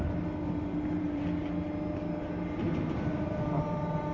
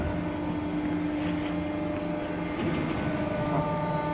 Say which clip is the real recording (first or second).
second